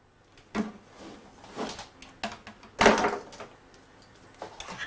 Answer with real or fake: real